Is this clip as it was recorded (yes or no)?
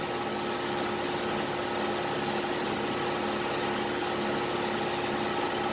yes